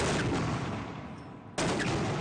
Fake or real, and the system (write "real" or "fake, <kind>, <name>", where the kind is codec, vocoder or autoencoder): real